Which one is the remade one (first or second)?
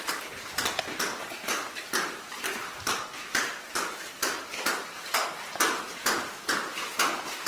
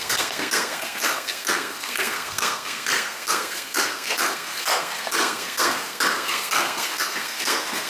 second